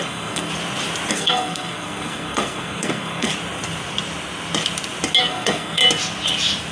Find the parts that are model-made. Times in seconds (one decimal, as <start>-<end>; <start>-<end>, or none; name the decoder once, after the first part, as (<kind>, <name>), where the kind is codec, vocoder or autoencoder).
0.0-0.5 (codec, SNAC); 1.1-3.3; 5.2-5.8